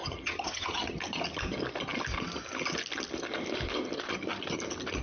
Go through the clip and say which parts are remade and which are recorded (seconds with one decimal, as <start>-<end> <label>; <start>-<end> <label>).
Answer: 0.0-1.0 remade; 1.0-5.0 recorded